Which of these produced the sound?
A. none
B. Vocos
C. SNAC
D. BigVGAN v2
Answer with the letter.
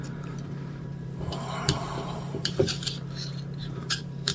D